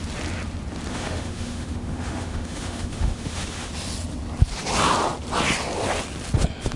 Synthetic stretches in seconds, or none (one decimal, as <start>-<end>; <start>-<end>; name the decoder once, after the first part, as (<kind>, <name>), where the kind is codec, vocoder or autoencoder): 0.9-3.7 (autoencoder, DAC-VAE)